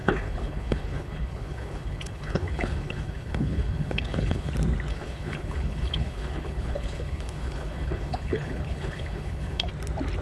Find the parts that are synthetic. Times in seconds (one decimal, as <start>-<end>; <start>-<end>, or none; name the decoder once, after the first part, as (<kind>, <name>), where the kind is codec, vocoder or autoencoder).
0.0-4.5 (codec, HILCodec); 4.9-9.7